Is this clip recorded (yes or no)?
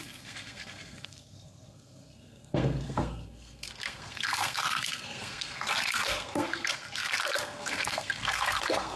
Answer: no